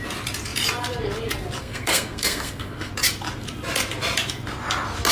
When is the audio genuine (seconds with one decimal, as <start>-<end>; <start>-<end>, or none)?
0.0-1.6; 2.9-5.1